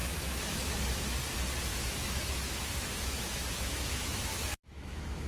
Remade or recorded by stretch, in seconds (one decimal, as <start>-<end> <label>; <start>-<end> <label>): 0.0-0.7 remade; 0.7-1.7 recorded; 1.7-5.3 remade